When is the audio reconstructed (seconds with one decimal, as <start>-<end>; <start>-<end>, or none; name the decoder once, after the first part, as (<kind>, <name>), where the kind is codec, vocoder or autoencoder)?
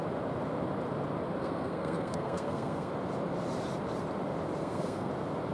1.4-2.9 (codec, SNAC); 4.6-5.1